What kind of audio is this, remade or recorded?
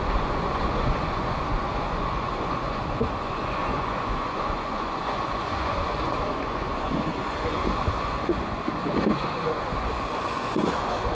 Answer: remade